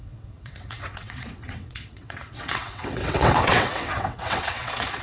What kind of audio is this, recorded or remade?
remade